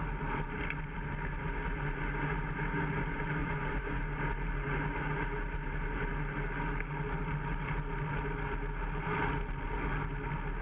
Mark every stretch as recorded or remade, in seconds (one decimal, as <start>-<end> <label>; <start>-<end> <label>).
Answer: 0.0-3.4 recorded; 3.4-4.0 remade; 4.0-10.6 recorded